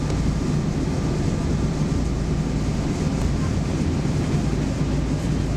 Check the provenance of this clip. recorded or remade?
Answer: recorded